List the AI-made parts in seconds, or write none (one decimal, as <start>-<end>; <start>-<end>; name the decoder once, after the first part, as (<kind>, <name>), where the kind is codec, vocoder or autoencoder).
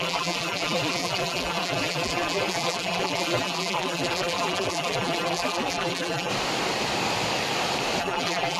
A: 0.0-6.3 (vocoder, BigVGAN v2); 8.0-8.6